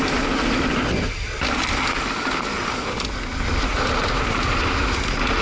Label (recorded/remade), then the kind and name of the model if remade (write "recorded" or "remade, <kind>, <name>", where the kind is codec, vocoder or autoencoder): recorded